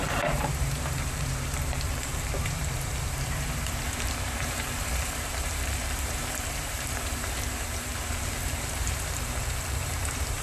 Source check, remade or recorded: remade